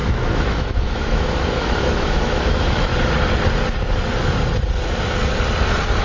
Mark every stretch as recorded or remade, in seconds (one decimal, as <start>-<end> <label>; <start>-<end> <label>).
0.0-2.9 remade; 2.9-6.0 recorded

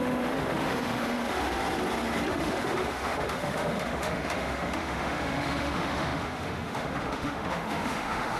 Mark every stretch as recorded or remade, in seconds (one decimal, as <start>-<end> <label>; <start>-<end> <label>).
0.0-1.6 remade; 1.6-2.3 recorded; 2.3-8.4 remade

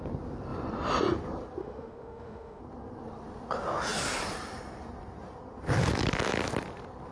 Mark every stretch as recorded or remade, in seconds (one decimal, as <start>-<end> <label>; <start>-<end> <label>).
0.0-1.6 recorded; 1.6-2.6 remade; 2.6-7.1 recorded

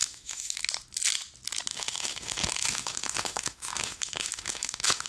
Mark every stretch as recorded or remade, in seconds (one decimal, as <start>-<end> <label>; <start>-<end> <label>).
0.0-0.6 remade; 0.6-1.7 recorded; 1.7-5.1 remade

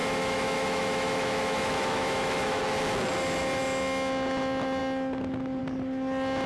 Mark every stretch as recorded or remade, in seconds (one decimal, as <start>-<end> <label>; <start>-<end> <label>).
0.0-2.6 remade; 2.6-6.5 recorded

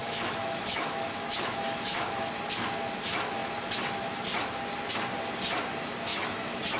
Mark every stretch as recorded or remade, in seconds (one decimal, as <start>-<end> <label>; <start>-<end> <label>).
0.0-2.3 remade; 2.3-6.1 recorded; 6.1-6.8 remade

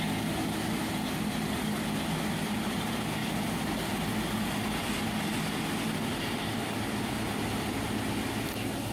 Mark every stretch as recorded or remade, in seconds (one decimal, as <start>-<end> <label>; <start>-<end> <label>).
0.0-8.9 recorded

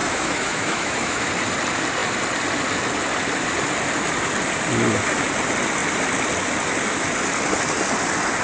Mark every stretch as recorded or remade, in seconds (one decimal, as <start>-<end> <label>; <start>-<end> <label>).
0.0-1.3 remade; 1.3-8.4 recorded